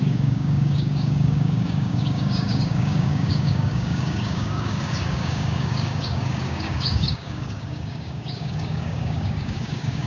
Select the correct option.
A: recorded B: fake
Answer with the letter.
B